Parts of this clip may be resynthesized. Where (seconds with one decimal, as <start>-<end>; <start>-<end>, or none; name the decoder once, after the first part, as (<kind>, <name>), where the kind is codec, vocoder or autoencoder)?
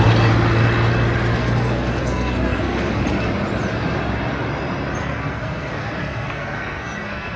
1.4-3.0 (codec, SNAC); 5.0-7.4